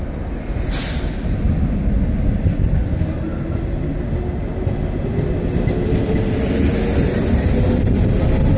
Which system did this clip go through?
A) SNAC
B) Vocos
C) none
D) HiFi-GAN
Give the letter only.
C